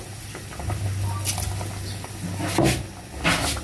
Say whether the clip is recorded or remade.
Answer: recorded